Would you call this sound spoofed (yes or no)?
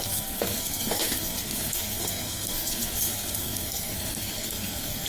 yes